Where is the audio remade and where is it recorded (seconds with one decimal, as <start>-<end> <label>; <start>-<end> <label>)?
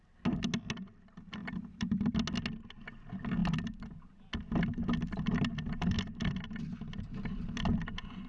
0.0-1.4 recorded; 1.4-2.1 remade; 2.1-8.3 recorded